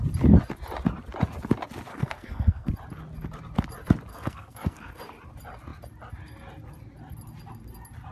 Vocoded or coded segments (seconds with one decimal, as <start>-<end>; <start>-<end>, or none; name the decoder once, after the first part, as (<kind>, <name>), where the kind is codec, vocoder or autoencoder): 1.9-2.7 (codec, SNAC); 4.1-5.0